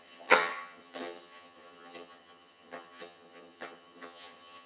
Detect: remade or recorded remade